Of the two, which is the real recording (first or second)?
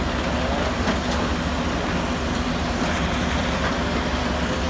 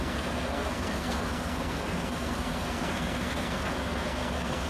first